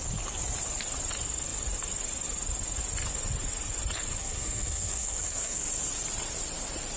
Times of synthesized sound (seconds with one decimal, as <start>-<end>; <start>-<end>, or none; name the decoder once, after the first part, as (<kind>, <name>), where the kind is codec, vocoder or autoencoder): 4.2-5.6 (codec, SNAC)